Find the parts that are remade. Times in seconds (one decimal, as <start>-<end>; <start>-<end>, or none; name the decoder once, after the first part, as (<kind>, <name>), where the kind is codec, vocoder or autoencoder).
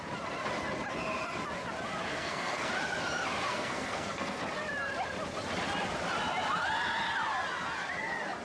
2.1-2.7 (codec, SNAC); 3.5-4.4